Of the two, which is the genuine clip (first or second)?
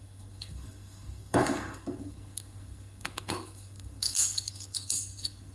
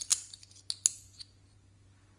second